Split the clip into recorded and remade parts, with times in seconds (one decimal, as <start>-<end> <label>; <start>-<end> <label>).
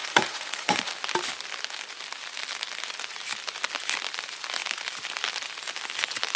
0.0-0.9 remade; 0.9-6.4 recorded